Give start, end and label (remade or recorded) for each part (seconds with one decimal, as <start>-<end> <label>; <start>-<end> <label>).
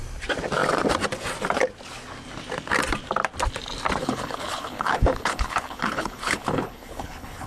0.0-4.0 recorded; 4.0-7.5 remade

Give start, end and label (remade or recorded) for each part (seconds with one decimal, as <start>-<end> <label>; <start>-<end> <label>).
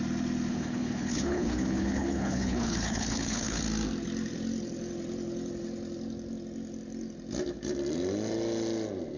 0.0-0.5 recorded; 0.5-3.6 remade; 3.6-9.2 recorded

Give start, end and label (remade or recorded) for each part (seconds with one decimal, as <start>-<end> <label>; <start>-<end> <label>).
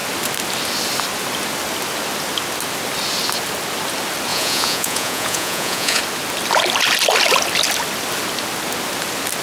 0.0-4.3 recorded; 4.3-6.0 remade; 6.0-9.4 recorded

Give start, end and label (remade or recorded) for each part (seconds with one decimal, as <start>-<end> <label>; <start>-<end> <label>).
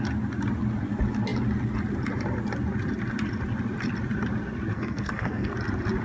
0.0-4.7 recorded; 4.7-5.5 remade; 5.5-6.0 recorded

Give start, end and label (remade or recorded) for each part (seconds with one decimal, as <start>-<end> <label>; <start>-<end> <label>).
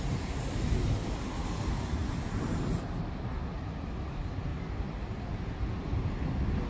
0.0-6.7 recorded